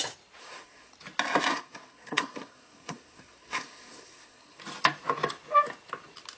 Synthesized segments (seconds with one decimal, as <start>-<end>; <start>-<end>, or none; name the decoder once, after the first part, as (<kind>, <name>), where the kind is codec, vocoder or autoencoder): 0.4-0.9 (codec, SNAC); 1.5-4.6